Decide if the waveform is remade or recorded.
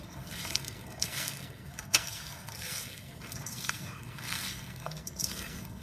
remade